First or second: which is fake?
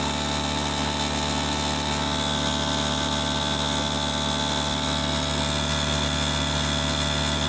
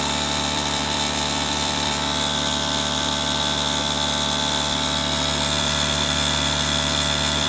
second